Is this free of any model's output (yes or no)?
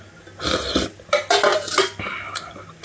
yes